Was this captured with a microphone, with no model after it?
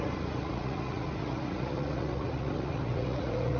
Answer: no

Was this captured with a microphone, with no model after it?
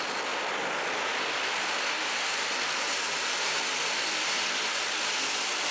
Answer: yes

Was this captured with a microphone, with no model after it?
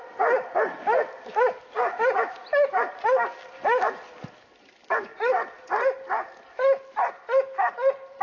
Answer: yes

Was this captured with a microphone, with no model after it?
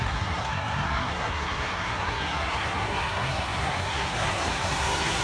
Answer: no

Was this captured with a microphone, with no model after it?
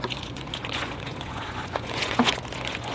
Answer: no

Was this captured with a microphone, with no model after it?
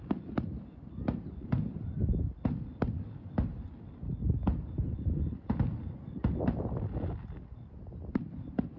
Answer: yes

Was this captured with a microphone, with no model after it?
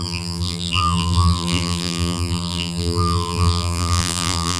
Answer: no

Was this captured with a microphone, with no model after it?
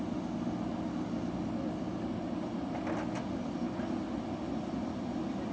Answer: yes